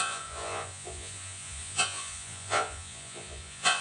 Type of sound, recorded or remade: remade